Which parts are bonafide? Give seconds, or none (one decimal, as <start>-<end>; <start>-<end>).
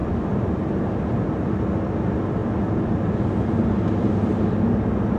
0.0-5.2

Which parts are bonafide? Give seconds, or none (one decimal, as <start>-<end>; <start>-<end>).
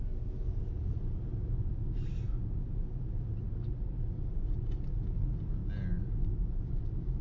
0.0-7.2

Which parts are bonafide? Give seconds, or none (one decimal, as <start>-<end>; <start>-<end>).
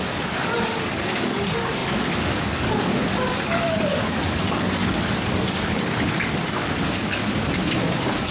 none